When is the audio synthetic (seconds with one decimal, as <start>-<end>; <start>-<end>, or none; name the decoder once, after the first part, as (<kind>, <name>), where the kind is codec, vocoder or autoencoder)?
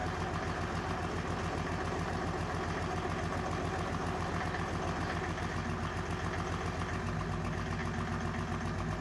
none